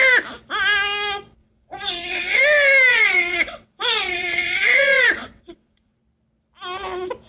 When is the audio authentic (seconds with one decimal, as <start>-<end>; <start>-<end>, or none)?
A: 0.0-1.4; 2.4-2.9; 6.0-7.3